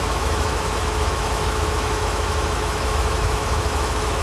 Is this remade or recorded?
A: remade